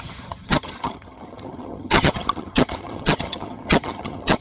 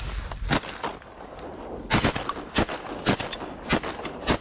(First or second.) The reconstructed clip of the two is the first